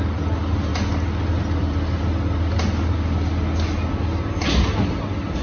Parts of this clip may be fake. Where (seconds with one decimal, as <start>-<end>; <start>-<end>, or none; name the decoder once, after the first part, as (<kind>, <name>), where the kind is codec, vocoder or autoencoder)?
none